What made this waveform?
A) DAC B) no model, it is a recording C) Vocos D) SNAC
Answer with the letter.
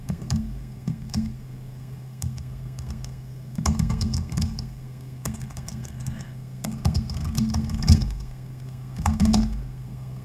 D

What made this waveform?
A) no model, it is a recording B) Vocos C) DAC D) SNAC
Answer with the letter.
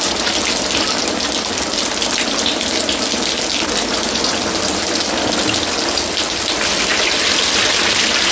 A